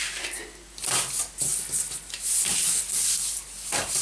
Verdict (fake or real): real